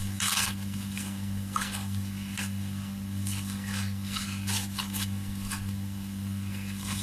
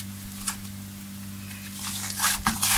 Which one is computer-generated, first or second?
first